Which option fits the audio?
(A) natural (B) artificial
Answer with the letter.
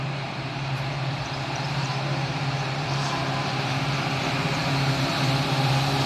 B